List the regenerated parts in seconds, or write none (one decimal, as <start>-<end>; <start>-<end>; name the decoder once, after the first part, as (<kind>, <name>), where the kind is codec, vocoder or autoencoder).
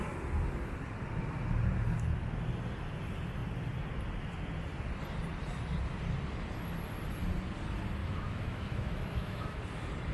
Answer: 8.0-9.6 (autoencoder, DAC-VAE)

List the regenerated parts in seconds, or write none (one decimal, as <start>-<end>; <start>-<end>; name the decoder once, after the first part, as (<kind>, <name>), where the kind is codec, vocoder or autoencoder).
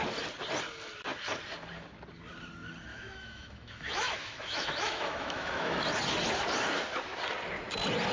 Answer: 2.9-5.8 (autoencoder, DAC-VAE)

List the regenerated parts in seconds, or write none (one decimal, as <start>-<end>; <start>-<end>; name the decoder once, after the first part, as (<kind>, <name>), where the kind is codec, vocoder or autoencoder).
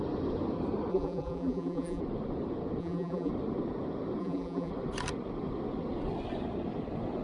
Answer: 0.9-2.0 (vocoder, BigVGAN v2); 2.8-3.3; 4.2-4.7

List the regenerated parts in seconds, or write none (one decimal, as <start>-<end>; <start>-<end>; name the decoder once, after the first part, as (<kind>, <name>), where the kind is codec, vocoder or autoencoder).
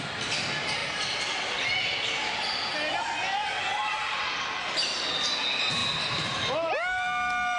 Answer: none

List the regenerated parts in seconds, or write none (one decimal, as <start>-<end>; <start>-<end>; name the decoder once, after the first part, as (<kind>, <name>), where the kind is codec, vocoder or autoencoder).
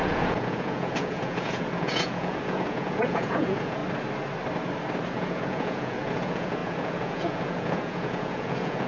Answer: 0.0-3.8 (vocoder, Vocos); 5.1-8.9